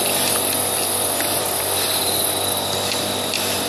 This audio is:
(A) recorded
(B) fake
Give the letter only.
B